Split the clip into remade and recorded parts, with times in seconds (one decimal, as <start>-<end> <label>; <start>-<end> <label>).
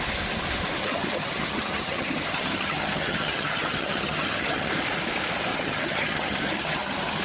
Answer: 0.0-0.8 recorded; 0.8-4.7 remade; 4.7-5.5 recorded; 5.5-7.2 remade